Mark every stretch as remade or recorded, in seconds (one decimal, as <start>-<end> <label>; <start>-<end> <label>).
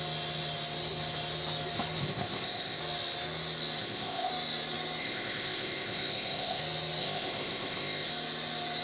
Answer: 0.0-2.0 recorded; 2.0-2.8 remade; 2.8-3.8 recorded; 3.8-4.3 remade; 4.3-5.0 recorded; 5.0-6.6 remade; 6.6-7.0 recorded; 7.0-8.1 remade; 8.1-8.8 recorded